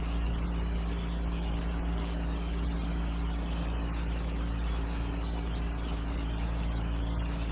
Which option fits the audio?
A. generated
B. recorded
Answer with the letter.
A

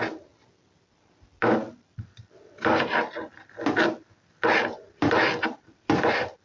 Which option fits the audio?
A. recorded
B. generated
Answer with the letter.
A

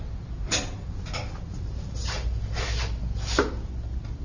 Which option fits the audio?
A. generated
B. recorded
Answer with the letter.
B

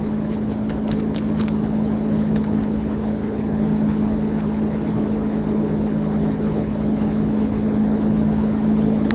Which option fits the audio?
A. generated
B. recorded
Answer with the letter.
A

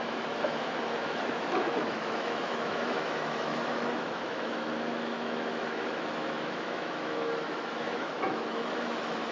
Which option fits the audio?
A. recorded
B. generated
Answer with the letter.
B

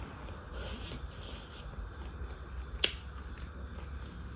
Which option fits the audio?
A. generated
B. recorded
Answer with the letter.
B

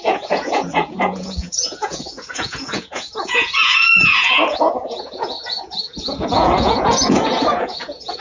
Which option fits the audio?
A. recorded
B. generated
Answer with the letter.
B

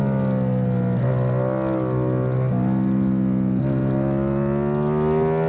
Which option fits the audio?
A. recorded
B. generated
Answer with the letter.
A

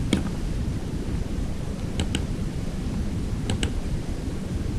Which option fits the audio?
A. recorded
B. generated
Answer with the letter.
A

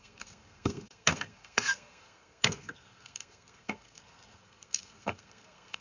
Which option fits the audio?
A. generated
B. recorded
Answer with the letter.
A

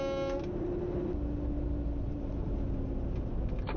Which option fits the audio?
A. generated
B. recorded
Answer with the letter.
B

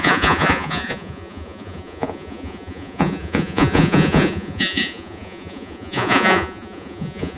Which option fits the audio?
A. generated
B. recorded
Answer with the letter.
A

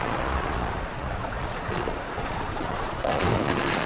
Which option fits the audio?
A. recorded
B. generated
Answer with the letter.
B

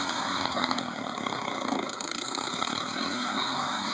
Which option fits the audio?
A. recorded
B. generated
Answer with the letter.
B